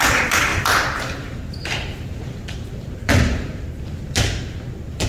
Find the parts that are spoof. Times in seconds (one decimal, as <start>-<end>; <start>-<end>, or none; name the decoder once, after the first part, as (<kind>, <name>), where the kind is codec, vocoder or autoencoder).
0.5-3.6 (vocoder, BigVGAN v2)